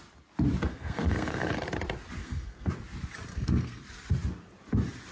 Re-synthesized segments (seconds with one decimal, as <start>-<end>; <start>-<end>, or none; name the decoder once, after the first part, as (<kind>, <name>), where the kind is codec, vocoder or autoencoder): 0.7-1.5 (codec, SNAC); 2.2-2.7; 3.3-3.8